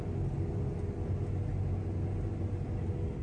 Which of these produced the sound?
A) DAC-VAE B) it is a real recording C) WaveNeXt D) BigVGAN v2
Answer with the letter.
B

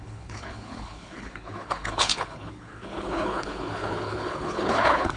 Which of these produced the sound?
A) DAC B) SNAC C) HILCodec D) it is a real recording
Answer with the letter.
C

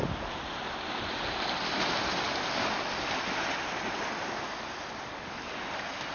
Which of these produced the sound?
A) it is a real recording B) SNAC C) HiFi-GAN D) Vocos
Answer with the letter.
A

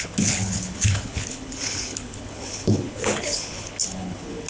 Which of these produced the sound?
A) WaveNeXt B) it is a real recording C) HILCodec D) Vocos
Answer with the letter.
C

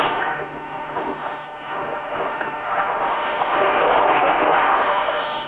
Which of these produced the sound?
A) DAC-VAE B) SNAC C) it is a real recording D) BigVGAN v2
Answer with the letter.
A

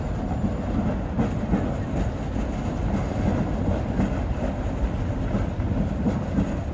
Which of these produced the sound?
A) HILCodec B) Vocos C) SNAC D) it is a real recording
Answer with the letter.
D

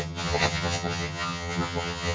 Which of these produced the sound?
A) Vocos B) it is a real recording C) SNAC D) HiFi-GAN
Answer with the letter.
D